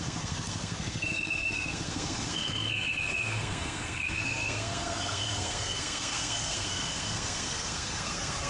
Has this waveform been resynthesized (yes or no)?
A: yes